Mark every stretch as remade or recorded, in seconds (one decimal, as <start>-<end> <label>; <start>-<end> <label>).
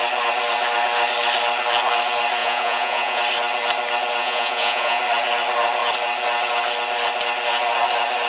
0.0-2.4 recorded; 2.4-3.2 remade; 3.2-4.2 recorded; 4.2-5.0 remade; 5.0-8.3 recorded